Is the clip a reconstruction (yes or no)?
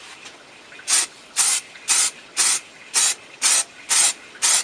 no